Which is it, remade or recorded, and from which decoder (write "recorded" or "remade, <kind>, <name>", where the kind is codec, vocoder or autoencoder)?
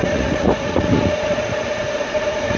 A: remade, vocoder, Vocos